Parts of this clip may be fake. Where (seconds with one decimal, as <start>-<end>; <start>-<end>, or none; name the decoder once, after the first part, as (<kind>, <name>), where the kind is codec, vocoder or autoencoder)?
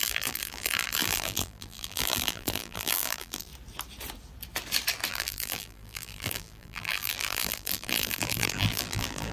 0.0-3.5 (vocoder, BigVGAN v2); 5.1-9.3